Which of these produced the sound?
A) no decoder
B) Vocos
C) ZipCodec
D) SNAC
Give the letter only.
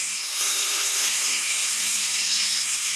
D